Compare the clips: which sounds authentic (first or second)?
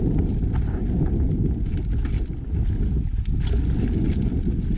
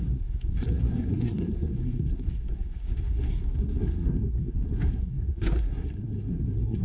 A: first